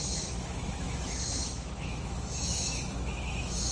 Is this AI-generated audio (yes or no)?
yes